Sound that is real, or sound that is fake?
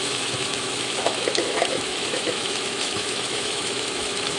fake